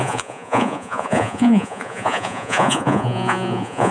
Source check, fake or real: fake